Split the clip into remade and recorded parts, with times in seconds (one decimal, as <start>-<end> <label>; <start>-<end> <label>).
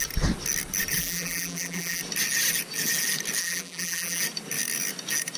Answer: 0.0-1.0 recorded; 1.0-2.0 remade; 2.0-3.4 recorded; 3.4-4.2 remade; 4.2-5.4 recorded